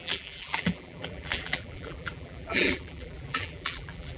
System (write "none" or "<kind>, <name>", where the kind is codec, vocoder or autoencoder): vocoder, BigVGAN v2